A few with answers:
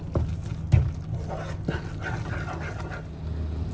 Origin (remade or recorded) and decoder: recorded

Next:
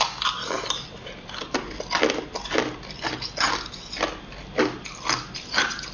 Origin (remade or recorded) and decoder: recorded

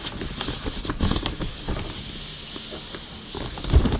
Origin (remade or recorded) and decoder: recorded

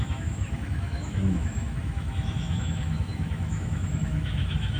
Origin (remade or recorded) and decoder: remade, autoencoder, DAC-VAE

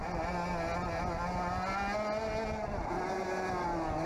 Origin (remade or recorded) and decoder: recorded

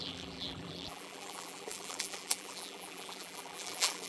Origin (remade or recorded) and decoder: remade, vocoder, BigVGAN v2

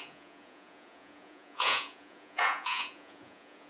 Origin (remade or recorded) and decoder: remade, vocoder, Vocos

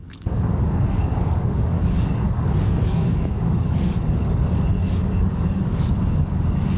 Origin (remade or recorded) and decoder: remade, codec, DAC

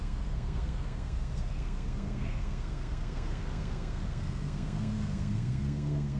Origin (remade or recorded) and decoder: remade, codec, SNAC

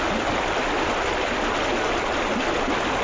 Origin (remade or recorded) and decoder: recorded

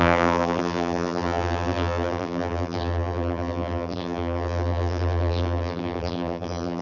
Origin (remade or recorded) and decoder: remade, vocoder, BigVGAN v2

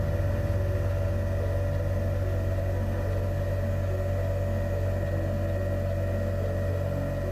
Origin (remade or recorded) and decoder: recorded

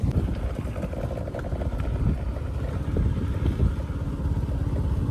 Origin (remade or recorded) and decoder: recorded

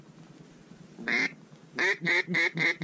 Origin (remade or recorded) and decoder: recorded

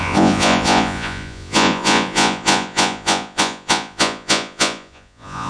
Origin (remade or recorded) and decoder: remade, vocoder, Vocos